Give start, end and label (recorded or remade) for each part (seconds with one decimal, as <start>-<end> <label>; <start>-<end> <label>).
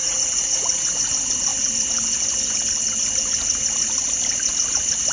0.0-1.1 remade; 1.1-5.1 recorded